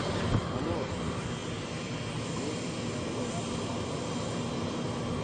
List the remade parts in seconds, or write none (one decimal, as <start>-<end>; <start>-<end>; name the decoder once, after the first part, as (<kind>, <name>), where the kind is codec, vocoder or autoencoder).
none